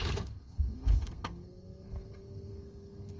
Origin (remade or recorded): remade